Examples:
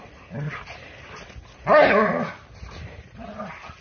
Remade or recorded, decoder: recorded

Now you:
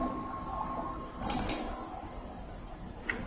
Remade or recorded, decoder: recorded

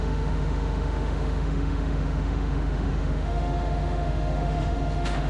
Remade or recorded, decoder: remade, autoencoder, DAC-VAE